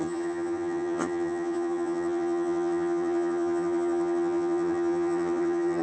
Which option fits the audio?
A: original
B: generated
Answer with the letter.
B